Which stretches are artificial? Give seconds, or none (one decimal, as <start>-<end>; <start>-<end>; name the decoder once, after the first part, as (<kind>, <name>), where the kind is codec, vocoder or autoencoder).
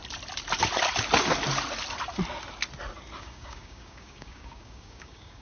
3.2-5.4 (codec, DAC)